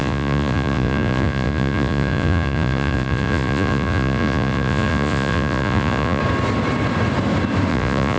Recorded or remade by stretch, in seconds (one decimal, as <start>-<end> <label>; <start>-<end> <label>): 0.0-6.2 remade; 6.2-7.7 recorded; 7.7-8.2 remade